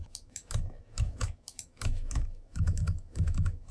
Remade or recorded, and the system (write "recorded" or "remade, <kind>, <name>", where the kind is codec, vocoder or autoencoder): remade, autoencoder, DAC-VAE